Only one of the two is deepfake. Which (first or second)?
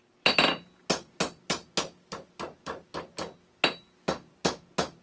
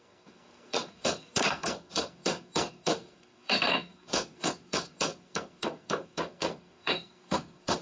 second